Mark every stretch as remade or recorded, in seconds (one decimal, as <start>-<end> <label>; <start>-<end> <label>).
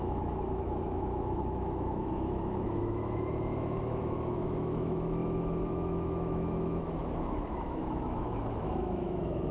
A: 0.0-9.5 remade